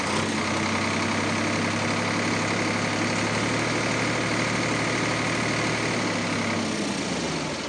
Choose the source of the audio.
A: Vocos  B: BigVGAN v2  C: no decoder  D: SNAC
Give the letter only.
C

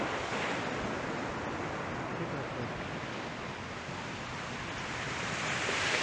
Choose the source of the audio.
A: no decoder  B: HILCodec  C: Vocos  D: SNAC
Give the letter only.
A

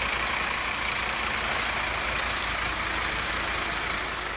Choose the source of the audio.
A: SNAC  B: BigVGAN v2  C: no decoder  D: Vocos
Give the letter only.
C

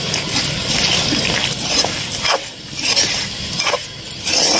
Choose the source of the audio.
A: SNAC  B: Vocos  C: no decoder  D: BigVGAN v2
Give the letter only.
C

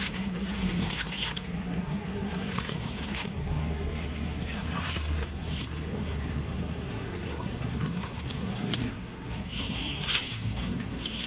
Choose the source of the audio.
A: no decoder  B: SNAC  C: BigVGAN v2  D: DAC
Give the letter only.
B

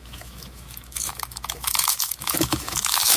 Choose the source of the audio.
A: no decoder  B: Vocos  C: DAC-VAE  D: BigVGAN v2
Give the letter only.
C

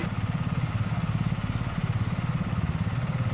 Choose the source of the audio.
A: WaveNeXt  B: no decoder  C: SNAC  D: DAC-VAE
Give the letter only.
B